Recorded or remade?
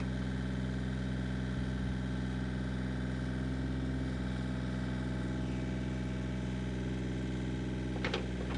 recorded